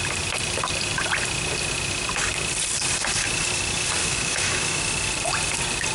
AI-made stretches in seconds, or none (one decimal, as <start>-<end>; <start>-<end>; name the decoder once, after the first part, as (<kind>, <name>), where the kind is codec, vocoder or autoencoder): 4.0-4.9 (autoencoder, DAC-VAE)